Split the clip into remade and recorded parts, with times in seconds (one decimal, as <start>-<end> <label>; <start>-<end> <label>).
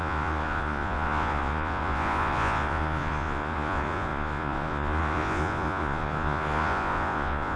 0.0-7.6 remade